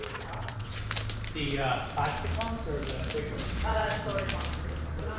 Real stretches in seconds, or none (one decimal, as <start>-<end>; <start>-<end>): 0.7-3.3; 4.1-5.2